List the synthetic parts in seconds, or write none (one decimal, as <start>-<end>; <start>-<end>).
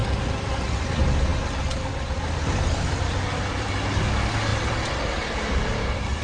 0.0-0.9; 1.3-3.7; 4.5-6.2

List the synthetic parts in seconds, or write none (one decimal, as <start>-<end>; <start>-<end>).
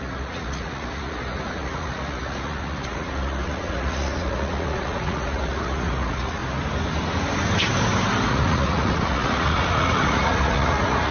0.0-6.4; 8.3-11.1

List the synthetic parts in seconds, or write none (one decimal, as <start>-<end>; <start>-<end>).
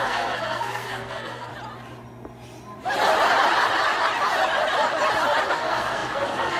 0.0-1.5; 5.5-6.6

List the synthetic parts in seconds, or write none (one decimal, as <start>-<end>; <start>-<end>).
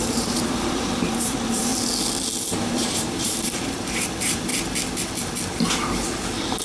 0.0-1.7; 2.6-4.5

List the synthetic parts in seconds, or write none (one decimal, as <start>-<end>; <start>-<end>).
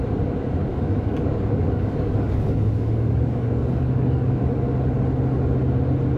0.7-4.4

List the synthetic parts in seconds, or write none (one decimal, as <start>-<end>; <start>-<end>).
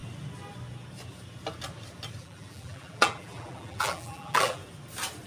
2.2-4.6